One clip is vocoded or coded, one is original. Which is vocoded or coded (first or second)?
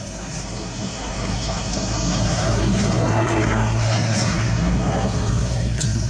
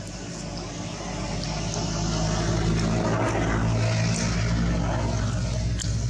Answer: first